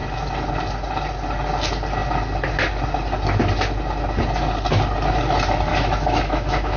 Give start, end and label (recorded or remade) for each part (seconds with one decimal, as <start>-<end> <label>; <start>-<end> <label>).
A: 0.0-5.7 recorded; 5.7-6.8 remade